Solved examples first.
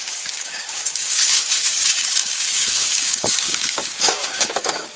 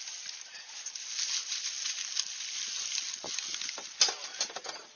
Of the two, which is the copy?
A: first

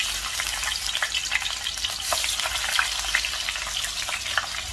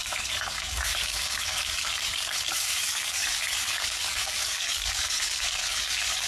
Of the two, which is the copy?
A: second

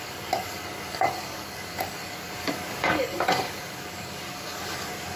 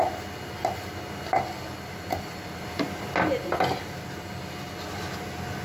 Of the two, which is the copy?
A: first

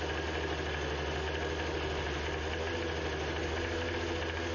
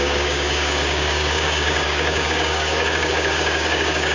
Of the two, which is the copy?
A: second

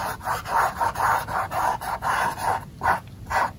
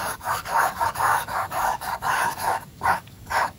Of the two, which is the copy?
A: second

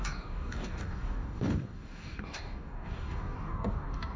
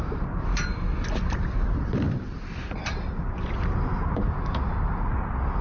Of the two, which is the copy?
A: first